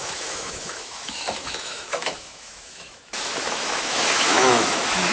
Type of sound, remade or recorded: remade